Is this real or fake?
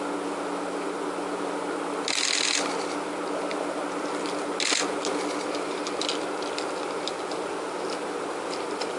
real